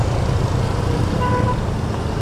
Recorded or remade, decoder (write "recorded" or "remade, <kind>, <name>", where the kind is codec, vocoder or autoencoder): recorded